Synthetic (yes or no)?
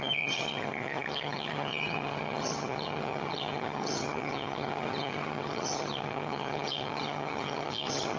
yes